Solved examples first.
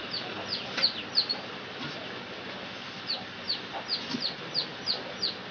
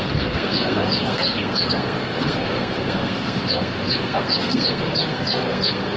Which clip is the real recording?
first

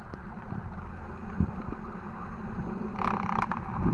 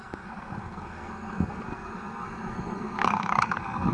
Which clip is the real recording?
first